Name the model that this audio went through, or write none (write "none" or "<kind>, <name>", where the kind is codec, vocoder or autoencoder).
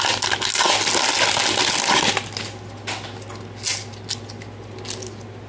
none